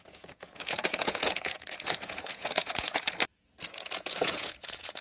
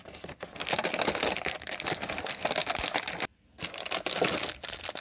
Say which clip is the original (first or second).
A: second